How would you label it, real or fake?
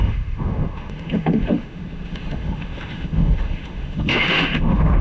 fake